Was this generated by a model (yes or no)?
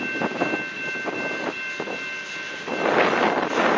no